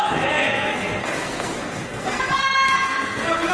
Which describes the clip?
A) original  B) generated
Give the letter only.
B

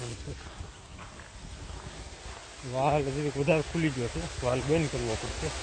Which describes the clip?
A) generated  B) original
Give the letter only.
B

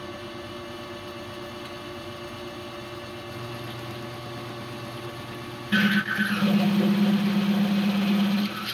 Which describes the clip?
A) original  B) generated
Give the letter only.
A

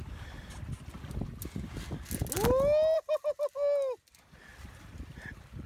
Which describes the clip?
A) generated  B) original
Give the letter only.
B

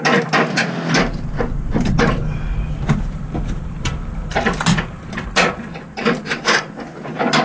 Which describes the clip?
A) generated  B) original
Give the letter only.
B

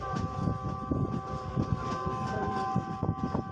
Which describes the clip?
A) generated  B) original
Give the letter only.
B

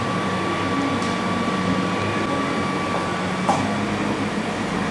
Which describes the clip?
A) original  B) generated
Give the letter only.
A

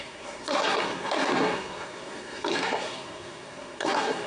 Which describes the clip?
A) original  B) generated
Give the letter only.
B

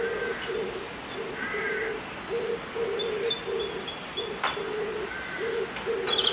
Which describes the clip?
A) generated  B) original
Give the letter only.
B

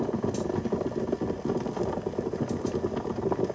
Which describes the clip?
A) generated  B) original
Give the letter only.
B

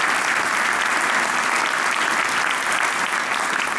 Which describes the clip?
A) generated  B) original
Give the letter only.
B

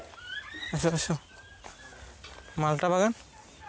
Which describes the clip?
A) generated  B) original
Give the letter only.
B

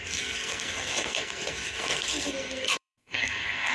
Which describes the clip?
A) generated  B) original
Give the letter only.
A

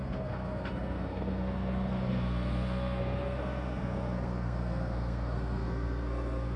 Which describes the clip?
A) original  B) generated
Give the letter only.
B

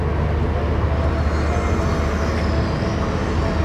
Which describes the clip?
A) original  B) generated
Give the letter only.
A